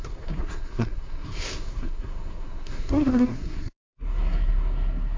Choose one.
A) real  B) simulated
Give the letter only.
B